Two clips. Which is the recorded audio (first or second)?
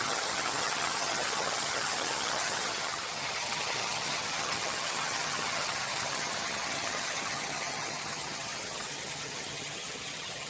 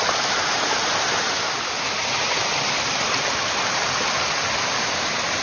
second